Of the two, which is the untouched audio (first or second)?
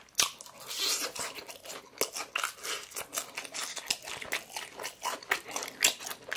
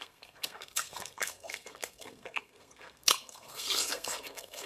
first